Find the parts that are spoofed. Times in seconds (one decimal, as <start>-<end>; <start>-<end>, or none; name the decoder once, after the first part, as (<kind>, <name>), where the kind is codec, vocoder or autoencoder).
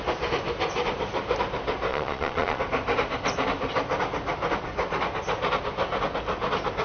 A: 1.9-2.6 (vocoder, Vocos)